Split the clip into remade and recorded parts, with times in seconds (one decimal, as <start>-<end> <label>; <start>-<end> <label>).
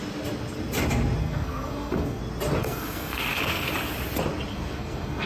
0.0-1.2 recorded; 1.2-2.2 remade; 2.2-2.6 recorded; 2.6-3.7 remade; 3.7-4.5 recorded; 4.5-5.3 remade